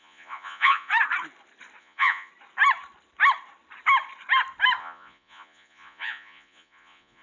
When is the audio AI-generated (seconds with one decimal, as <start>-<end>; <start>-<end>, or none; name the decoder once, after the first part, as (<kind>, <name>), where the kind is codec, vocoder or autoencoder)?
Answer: 0.0-0.9 (vocoder, Vocos); 1.8-2.3; 4.8-7.2